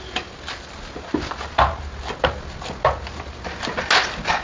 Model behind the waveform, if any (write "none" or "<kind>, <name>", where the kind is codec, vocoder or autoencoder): none